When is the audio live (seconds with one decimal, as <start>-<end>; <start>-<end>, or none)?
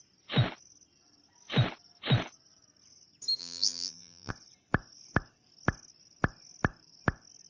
0.0-3.4; 4.3-7.5